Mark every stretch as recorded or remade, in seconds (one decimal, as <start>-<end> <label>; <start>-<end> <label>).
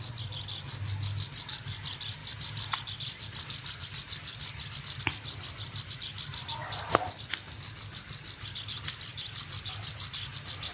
0.0-10.7 recorded